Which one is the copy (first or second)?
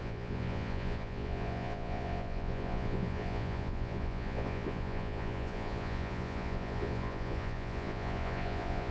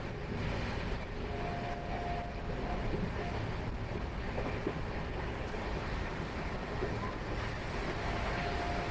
first